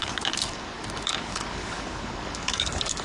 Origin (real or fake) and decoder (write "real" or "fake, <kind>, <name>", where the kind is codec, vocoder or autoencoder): fake, codec, DAC